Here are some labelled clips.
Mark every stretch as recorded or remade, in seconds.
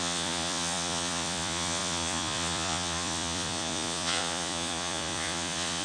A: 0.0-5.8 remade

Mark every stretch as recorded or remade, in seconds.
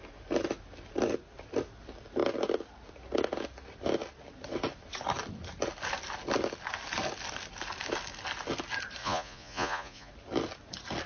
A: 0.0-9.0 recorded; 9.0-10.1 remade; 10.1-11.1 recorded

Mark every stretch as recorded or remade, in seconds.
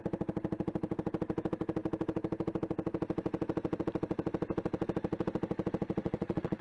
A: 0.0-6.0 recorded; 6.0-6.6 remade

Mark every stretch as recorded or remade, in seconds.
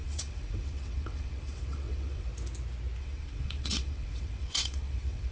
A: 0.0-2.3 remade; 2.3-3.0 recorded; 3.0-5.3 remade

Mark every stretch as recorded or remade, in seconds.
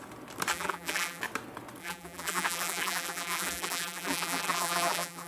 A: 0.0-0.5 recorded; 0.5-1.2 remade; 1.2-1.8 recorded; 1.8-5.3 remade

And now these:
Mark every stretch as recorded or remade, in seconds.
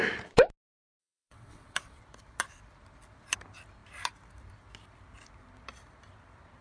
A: 0.0-1.0 recorded; 1.0-2.0 remade; 2.0-6.6 recorded